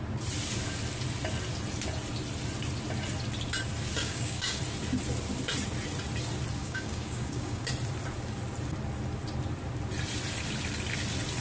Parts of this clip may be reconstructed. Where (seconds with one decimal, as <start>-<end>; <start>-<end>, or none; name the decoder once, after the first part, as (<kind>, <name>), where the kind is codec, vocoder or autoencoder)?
4.0-4.6 (codec, DAC); 6.6-7.6